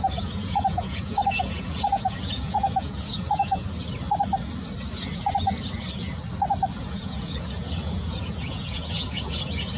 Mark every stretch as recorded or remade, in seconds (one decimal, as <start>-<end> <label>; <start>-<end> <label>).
0.0-3.6 remade; 3.6-6.8 recorded; 6.8-9.8 remade